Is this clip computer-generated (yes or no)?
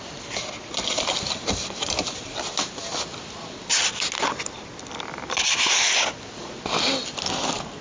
no